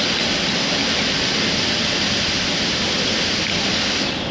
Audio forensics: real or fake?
real